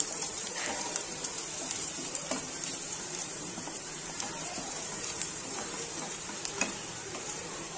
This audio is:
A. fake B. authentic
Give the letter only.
A